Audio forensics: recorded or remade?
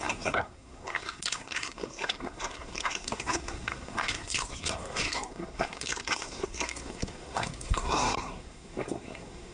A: remade